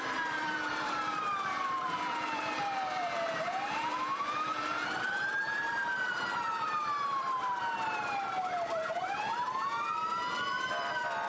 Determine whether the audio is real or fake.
fake